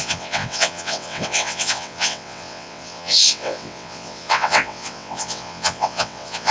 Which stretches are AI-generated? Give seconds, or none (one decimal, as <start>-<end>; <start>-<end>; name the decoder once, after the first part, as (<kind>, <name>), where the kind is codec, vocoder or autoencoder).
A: 0.0-6.5 (vocoder, WaveNeXt)